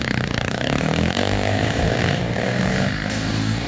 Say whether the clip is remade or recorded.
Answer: remade